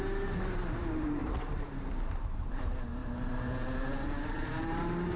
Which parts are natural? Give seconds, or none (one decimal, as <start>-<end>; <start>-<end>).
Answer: none